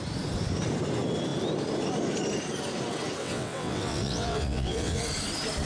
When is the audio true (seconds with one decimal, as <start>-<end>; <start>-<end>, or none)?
0.0-3.2; 5.0-5.7